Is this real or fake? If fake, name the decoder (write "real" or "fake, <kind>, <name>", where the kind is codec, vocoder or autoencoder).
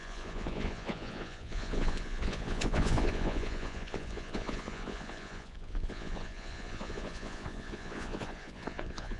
fake, vocoder, Vocos